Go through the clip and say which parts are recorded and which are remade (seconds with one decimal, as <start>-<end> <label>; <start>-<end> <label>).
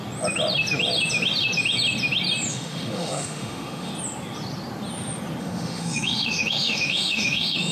0.0-2.5 recorded; 2.5-3.9 remade; 3.9-5.4 recorded; 5.4-7.7 remade